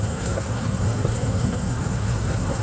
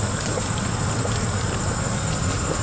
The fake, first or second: first